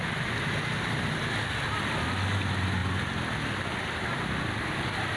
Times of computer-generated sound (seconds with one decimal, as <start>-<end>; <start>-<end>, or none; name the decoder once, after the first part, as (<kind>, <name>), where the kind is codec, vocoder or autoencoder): none